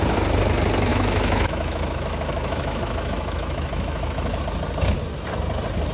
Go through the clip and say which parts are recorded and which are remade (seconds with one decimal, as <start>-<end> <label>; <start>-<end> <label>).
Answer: 0.0-0.9 recorded; 0.9-4.4 remade; 4.4-5.9 recorded